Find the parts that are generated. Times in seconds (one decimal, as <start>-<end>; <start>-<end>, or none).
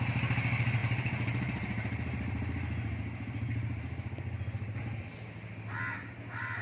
0.8-4.8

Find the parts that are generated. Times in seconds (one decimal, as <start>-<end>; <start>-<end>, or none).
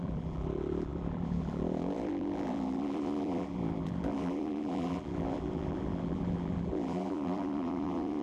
0.0-8.2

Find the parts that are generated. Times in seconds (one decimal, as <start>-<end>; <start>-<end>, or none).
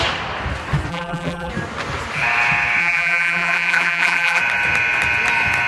0.9-1.5; 2.8-4.4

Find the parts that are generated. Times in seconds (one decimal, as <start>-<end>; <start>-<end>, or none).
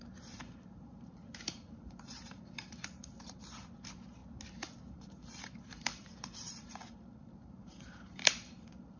0.0-4.2; 4.9-9.0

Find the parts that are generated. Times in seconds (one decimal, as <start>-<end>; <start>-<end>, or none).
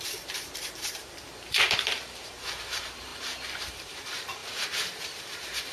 0.0-5.7